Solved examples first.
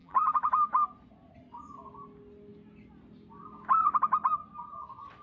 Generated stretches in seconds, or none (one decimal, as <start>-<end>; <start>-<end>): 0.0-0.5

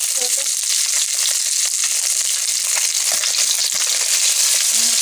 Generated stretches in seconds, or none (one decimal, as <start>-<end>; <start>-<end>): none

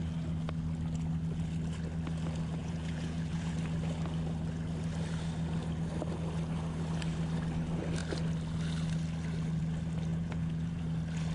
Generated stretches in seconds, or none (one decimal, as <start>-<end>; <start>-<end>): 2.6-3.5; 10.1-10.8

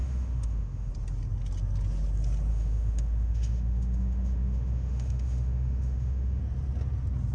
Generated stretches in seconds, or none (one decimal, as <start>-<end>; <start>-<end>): 0.0-0.9; 2.5-6.4